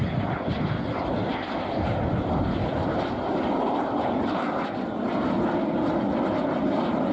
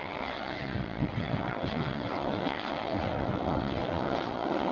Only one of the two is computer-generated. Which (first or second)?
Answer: second